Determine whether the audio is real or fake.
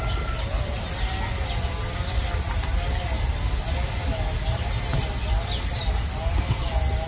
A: real